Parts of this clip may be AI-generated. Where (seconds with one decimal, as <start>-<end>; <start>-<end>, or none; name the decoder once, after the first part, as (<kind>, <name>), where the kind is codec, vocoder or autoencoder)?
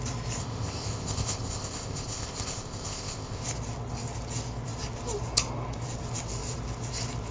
0.4-3.4 (codec, ZipCodec)